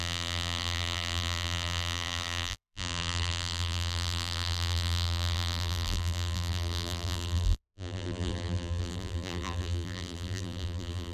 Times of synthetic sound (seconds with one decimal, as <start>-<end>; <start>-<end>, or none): 0.0-11.1